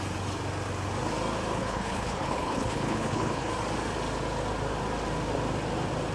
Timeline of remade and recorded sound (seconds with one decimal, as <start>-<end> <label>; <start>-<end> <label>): 0.0-1.5 recorded; 1.5-3.5 remade; 3.5-6.1 recorded